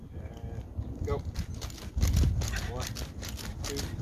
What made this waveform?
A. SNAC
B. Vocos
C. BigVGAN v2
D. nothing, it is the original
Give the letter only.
D